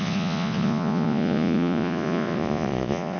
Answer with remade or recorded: remade